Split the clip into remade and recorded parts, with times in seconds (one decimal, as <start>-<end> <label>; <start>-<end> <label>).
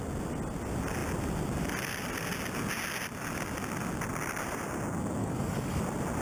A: 0.0-5.2 recorded; 5.2-5.8 remade; 5.8-6.2 recorded